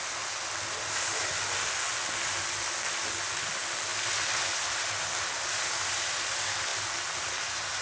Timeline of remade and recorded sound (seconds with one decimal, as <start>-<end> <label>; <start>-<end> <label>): 0.0-3.9 recorded; 3.9-4.8 remade; 4.8-7.8 recorded

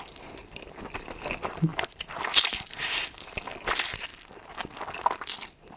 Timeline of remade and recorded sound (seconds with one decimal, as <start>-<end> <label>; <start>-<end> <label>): 0.0-4.1 remade; 4.1-5.8 recorded

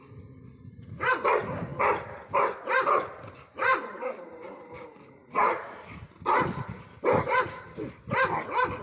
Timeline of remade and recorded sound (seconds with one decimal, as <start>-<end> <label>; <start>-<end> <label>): 0.0-3.7 recorded; 3.7-7.6 remade; 7.6-8.8 recorded

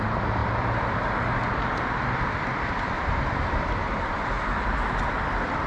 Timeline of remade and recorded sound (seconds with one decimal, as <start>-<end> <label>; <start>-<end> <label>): 0.0-4.1 remade; 4.1-4.9 recorded; 4.9-5.7 remade

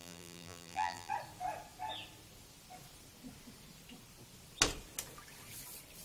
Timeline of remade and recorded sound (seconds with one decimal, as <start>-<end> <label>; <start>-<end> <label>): 0.0-1.1 remade; 1.1-6.0 recorded

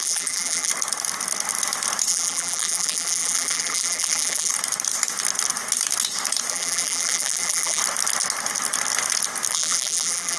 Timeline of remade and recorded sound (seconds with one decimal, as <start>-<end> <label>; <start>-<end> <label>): 0.0-0.7 remade; 0.7-2.1 recorded; 2.1-4.5 remade; 4.5-6.5 recorded; 6.5-7.8 remade; 7.8-9.5 recorded; 9.5-10.4 remade

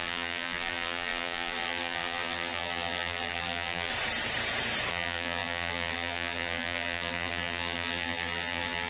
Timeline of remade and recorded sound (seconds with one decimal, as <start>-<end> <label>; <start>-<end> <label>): 0.0-3.9 remade; 3.9-4.9 recorded; 4.9-8.9 remade